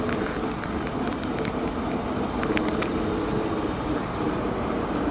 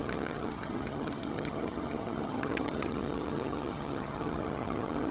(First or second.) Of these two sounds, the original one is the first